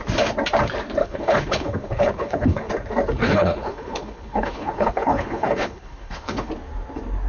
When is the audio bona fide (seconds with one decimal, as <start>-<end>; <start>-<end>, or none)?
0.0-1.0; 2.7-3.2; 6.5-7.3